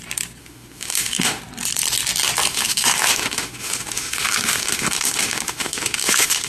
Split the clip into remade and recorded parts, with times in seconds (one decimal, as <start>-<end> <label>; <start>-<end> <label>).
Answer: 0.0-0.4 recorded; 0.4-1.4 remade; 1.4-2.5 recorded; 2.5-6.5 remade